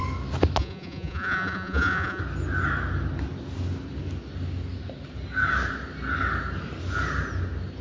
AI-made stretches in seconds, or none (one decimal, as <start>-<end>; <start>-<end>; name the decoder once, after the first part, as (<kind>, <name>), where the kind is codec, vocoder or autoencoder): 0.6-2.2 (vocoder, Vocos)